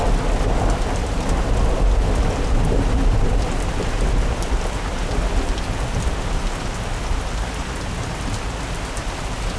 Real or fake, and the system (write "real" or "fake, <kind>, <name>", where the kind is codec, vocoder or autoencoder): real